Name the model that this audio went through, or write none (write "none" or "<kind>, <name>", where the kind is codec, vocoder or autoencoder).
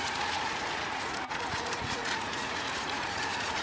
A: vocoder, Vocos